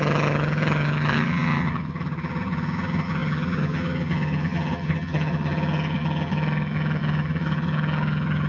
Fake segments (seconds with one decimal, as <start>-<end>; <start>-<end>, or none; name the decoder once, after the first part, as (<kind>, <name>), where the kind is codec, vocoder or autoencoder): 0.0-8.5 (vocoder, HiFi-GAN)